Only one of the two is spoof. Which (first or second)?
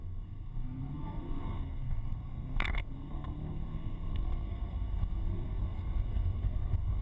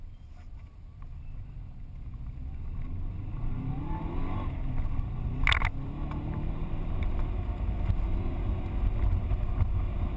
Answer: first